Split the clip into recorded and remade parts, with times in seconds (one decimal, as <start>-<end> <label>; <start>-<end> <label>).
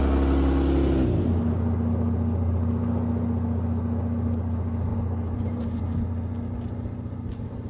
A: 0.0-4.9 recorded; 4.9-5.8 remade; 5.8-7.7 recorded